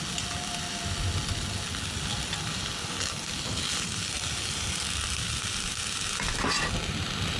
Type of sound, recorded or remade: recorded